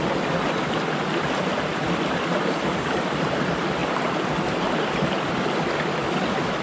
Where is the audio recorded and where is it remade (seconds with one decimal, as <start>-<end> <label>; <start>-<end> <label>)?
0.0-6.6 recorded